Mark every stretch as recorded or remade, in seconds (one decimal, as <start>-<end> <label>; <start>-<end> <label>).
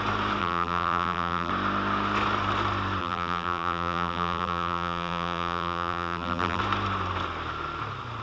0.0-0.4 recorded; 0.4-1.5 remade; 1.5-3.0 recorded; 3.0-6.6 remade; 6.6-8.2 recorded